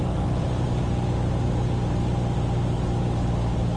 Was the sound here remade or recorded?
recorded